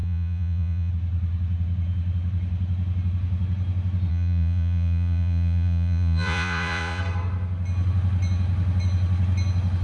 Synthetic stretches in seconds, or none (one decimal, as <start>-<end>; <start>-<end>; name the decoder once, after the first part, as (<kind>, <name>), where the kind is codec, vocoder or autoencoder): 0.0-0.9 (vocoder, Vocos); 4.1-7.0